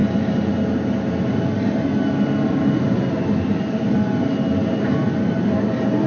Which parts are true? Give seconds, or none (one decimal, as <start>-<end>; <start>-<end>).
0.0-6.1